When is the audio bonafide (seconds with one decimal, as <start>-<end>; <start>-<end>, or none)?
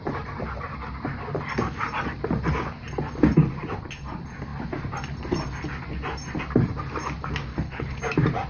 0.0-7.5; 8.0-8.5